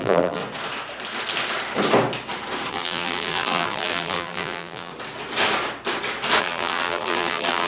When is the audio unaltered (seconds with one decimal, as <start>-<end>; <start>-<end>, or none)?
0.4-2.7; 4.9-6.4